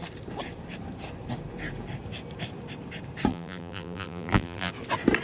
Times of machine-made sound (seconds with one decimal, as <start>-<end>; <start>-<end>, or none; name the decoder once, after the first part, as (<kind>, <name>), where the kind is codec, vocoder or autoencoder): 3.3-4.7 (vocoder, BigVGAN v2)